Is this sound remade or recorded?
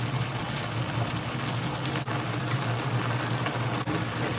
recorded